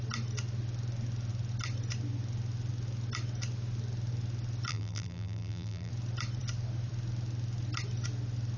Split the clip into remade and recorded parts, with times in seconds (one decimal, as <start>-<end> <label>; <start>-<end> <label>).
0.0-4.7 recorded; 4.7-5.9 remade; 5.9-8.6 recorded

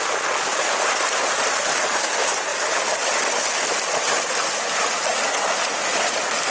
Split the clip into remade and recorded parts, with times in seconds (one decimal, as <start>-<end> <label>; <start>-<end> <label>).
0.0-6.5 recorded